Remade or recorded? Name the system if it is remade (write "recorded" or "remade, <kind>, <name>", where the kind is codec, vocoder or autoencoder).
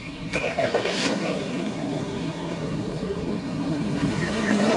remade, codec, SNAC